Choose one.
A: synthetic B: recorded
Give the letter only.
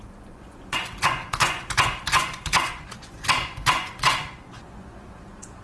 A